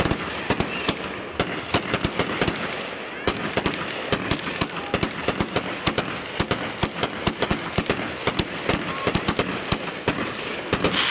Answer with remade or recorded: recorded